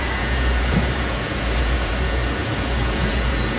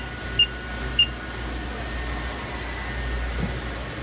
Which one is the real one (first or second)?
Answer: second